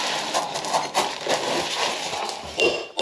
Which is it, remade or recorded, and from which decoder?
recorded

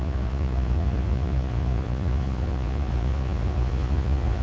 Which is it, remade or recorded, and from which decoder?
remade, vocoder, Vocos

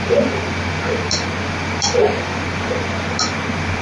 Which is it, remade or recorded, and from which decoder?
recorded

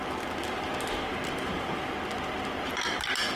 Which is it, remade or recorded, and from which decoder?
recorded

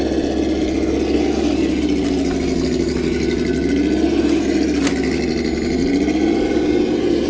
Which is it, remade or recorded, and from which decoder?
recorded